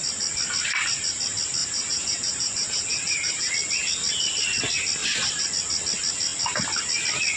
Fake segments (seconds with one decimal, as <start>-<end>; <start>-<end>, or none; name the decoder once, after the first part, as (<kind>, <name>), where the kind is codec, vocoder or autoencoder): 1.6-3.5 (vocoder, BigVGAN v2); 5.0-5.5